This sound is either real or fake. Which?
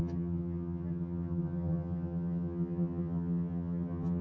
fake